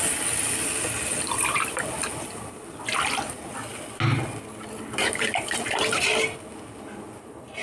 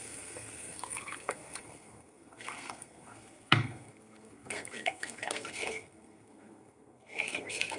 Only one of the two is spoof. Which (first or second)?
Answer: second